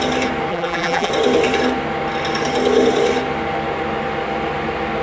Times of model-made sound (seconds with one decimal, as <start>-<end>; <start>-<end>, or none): 0.5-1.1